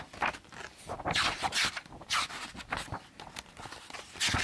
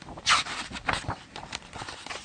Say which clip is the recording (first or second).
first